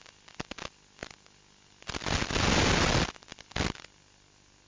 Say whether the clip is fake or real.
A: real